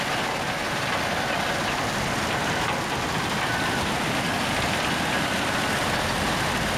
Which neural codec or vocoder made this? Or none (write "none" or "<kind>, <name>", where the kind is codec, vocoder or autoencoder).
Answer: none